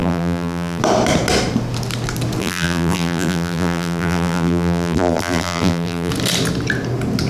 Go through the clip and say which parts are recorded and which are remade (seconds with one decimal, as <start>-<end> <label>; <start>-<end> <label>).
0.0-0.8 remade; 0.8-2.4 recorded; 2.4-6.1 remade; 6.1-7.3 recorded